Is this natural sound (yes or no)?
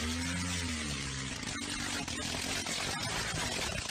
yes